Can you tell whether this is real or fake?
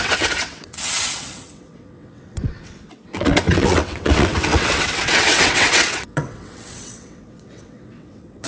fake